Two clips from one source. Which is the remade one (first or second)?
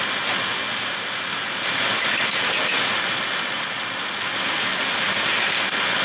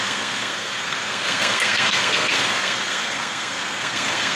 second